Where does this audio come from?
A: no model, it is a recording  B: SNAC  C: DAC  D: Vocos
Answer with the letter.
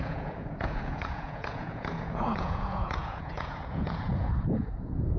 D